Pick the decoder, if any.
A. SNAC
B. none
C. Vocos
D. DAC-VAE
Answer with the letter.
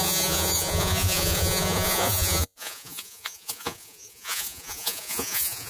C